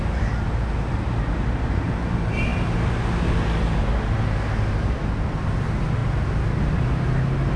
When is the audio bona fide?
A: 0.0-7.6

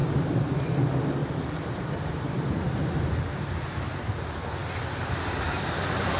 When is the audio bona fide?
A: 0.5-6.2